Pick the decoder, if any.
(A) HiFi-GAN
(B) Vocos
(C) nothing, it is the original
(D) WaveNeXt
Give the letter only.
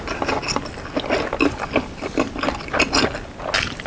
C